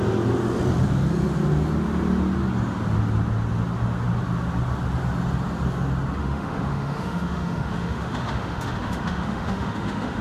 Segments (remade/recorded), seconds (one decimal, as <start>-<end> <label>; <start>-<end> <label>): 0.0-6.2 recorded; 6.2-10.2 remade